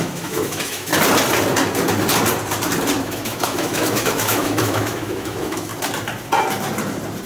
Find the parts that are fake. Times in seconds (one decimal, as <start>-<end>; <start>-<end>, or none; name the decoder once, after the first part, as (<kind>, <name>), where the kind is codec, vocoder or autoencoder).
0.0-0.9 (autoencoder, DAC-VAE); 3.0-5.7